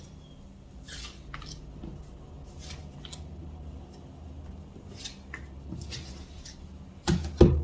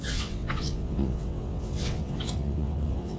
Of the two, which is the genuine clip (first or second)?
first